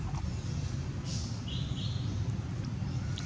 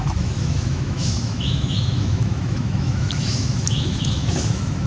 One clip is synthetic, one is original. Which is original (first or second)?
first